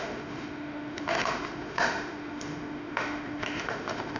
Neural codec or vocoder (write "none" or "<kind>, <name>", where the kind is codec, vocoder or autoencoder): autoencoder, DAC-VAE